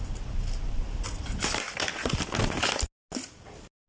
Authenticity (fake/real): real